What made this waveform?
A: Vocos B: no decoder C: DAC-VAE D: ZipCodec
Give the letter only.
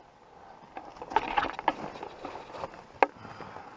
B